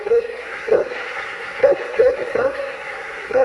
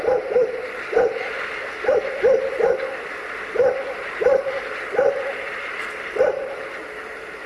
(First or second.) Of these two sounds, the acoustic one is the second